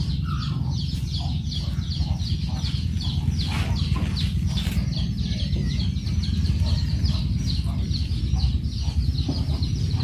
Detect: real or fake real